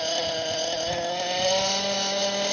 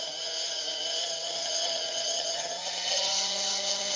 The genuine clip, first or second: first